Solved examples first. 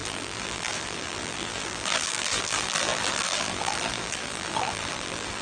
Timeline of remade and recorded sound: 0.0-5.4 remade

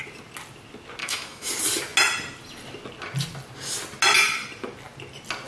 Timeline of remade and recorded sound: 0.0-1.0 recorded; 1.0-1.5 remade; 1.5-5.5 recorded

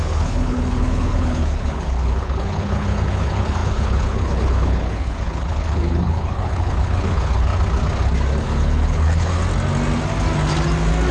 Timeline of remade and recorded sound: 0.0-7.5 remade; 7.5-8.4 recorded; 8.4-9.4 remade; 9.4-11.1 recorded

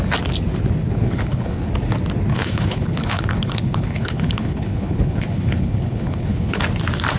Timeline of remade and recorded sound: 0.0-0.8 recorded; 0.8-1.7 remade; 1.7-2.3 recorded; 2.3-6.6 remade; 6.6-7.2 recorded

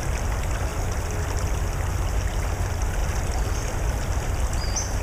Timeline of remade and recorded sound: 0.0-5.0 recorded